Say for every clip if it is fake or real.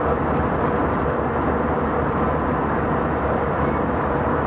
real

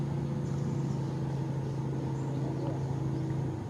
real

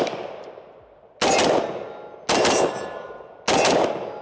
real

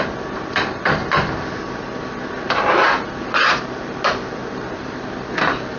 real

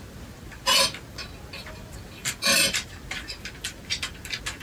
real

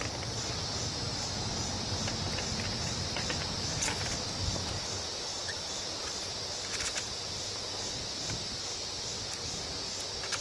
real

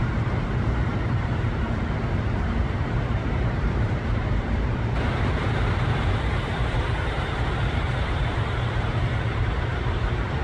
fake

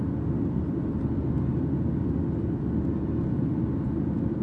real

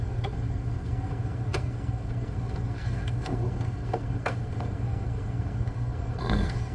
fake